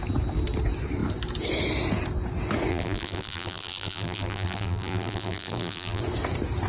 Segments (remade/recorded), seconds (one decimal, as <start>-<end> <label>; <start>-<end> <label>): 0.0-2.7 recorded; 2.7-6.0 remade; 6.0-6.7 recorded

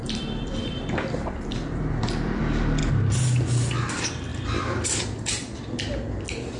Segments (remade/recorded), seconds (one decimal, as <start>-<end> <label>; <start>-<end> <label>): 0.0-2.4 remade; 2.4-4.3 recorded; 4.3-5.6 remade; 5.6-6.6 recorded

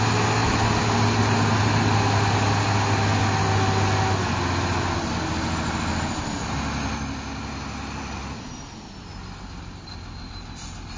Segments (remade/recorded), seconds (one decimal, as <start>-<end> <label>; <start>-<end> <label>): 0.0-11.0 recorded